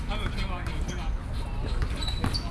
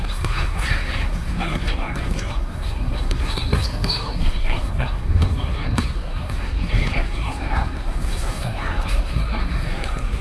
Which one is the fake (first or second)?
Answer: second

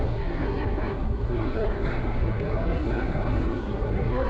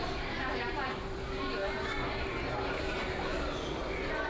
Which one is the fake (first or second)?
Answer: first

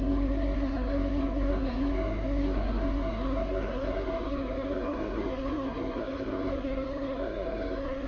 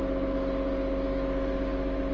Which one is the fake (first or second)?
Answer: first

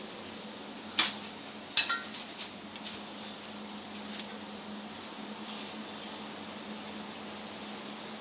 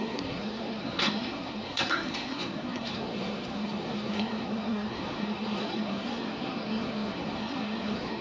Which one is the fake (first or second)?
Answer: second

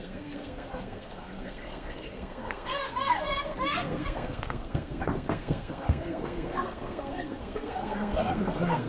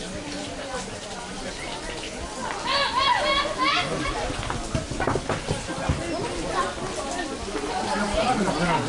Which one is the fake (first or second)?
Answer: first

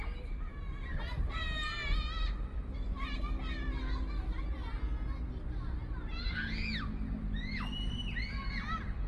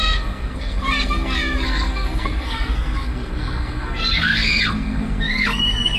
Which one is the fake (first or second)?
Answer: second